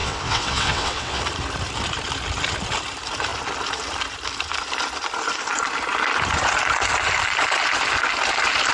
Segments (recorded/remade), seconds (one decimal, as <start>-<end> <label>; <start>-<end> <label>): 0.0-1.2 remade; 1.2-8.7 recorded